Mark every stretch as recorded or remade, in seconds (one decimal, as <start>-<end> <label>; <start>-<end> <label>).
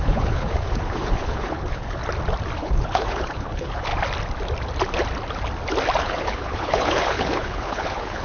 0.0-2.0 remade; 2.0-2.6 recorded; 2.6-3.9 remade; 3.9-6.0 recorded; 6.0-8.2 remade